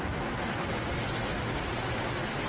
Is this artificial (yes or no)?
no